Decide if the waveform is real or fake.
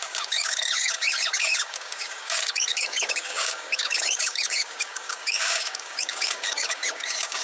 fake